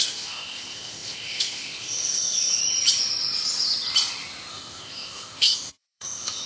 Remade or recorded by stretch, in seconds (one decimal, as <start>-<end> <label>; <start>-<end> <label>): 0.0-2.6 remade; 2.6-4.5 recorded; 4.5-6.5 remade